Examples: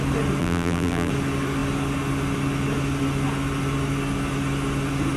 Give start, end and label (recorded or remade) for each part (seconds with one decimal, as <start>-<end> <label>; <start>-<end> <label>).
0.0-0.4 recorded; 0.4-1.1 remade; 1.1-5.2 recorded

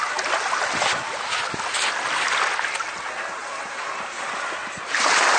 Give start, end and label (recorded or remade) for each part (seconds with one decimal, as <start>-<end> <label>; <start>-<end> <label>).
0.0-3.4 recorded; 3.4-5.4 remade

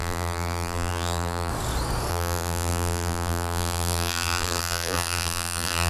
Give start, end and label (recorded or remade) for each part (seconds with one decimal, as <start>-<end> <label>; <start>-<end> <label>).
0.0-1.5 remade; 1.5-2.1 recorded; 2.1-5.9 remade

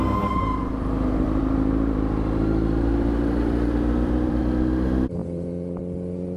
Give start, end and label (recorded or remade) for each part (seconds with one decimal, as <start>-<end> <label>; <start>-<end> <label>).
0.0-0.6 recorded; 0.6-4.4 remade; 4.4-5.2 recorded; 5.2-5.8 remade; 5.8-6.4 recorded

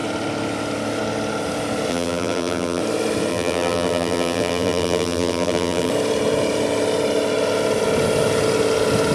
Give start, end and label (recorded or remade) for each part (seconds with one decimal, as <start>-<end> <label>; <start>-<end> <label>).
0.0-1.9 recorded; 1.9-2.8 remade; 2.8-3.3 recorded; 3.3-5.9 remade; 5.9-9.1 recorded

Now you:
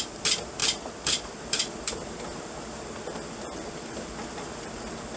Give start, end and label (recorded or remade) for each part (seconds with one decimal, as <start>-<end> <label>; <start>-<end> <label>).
0.0-5.2 remade